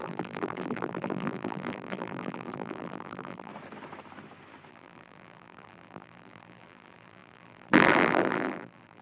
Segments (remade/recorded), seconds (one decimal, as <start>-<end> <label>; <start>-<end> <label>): 0.0-3.5 remade; 3.5-4.7 recorded; 4.7-9.0 remade